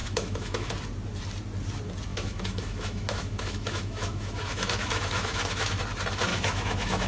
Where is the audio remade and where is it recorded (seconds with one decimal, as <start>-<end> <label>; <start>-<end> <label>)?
0.0-0.7 remade; 0.7-2.1 recorded; 2.1-5.8 remade; 5.8-6.3 recorded; 6.3-7.1 remade